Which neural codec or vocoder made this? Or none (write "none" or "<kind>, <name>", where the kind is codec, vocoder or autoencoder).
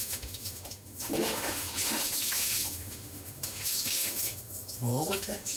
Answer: autoencoder, DAC-VAE